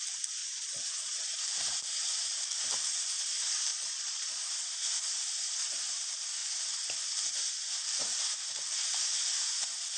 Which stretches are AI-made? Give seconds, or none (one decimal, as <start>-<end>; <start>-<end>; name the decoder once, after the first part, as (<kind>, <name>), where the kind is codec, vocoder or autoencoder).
0.4-1.3 (vocoder, Vocos); 3.7-4.5